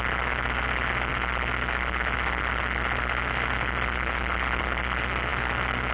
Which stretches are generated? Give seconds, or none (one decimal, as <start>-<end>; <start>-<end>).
none